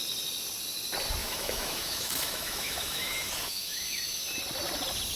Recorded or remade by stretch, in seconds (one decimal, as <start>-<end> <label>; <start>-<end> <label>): 0.0-1.2 recorded; 1.2-4.3 remade; 4.3-5.2 recorded